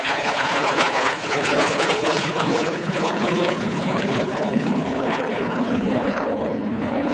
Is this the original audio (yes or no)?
no